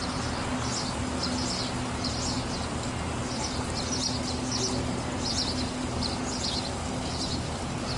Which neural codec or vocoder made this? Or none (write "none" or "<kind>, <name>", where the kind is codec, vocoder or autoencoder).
none